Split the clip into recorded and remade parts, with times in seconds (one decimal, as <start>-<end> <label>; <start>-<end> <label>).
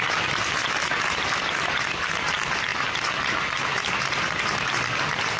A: 0.0-5.4 recorded